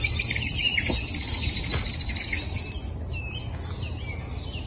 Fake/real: real